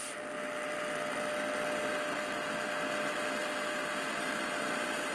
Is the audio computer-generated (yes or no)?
no